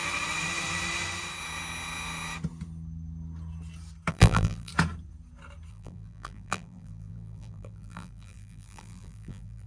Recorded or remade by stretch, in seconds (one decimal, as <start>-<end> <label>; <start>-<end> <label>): 0.0-4.1 recorded; 4.1-4.7 remade; 4.7-5.7 recorded; 5.7-9.7 remade